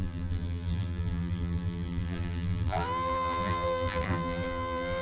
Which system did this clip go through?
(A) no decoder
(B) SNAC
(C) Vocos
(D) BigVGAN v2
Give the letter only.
D